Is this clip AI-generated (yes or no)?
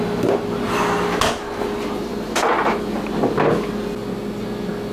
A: no